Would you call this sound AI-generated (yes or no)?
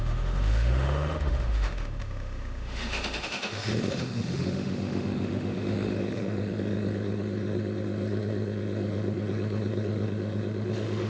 yes